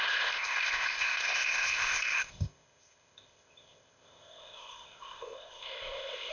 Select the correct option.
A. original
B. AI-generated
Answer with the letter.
B